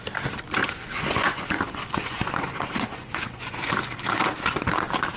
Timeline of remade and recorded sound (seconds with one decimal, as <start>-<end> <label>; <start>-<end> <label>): 0.0-0.6 recorded; 0.6-3.7 remade; 3.7-5.2 recorded